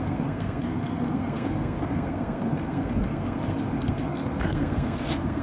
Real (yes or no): no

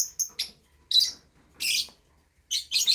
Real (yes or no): yes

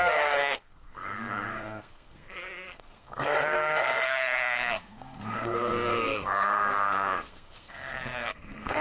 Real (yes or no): no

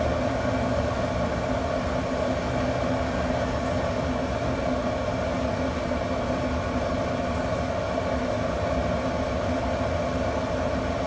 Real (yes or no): yes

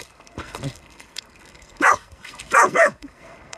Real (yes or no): no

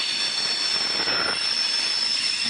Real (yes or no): yes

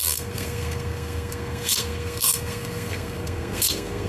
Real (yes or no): no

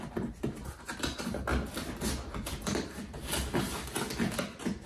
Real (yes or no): yes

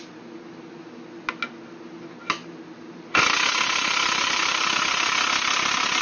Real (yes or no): yes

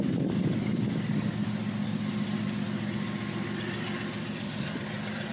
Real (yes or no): yes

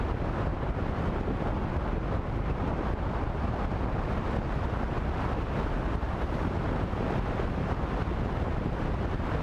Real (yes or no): yes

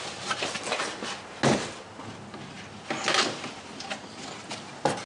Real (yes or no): yes